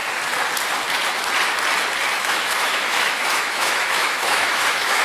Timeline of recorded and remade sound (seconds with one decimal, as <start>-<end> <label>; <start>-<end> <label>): 0.0-2.1 recorded; 2.1-5.0 remade